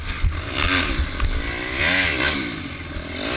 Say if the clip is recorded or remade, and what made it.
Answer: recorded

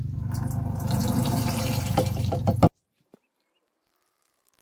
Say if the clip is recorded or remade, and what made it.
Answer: remade, vocoder, BigVGAN v2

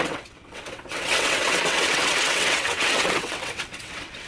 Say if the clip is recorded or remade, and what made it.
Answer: remade, vocoder, WaveNeXt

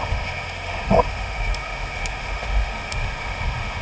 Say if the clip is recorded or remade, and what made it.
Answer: remade, autoencoder, DAC-VAE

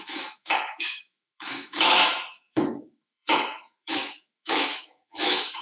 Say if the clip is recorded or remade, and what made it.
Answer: remade, autoencoder, DAC-VAE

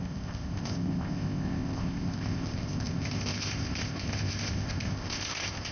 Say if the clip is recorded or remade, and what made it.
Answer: remade, codec, ZipCodec